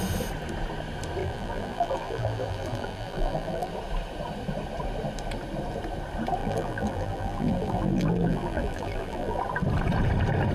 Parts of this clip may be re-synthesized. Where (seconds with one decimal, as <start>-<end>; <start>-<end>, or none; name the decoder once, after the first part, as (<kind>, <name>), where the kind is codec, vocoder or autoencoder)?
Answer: 1.2-3.7 (vocoder, BigVGAN v2); 6.4-9.4